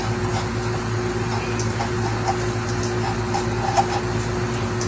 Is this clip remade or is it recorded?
recorded